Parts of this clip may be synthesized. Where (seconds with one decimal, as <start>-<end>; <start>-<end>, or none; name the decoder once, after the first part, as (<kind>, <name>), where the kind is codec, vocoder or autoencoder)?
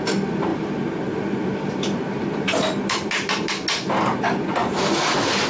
0.5-3.5 (vocoder, BigVGAN v2)